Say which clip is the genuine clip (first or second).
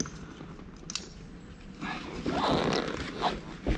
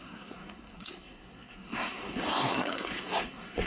first